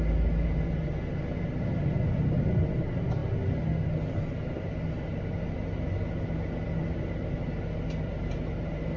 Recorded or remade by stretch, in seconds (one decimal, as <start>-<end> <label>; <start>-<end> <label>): 0.0-9.0 recorded